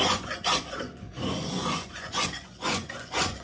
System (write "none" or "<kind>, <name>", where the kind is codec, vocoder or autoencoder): vocoder, Vocos